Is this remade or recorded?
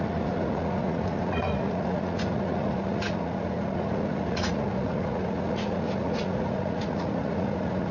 remade